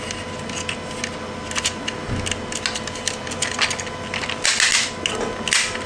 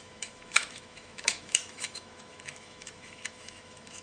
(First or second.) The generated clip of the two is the second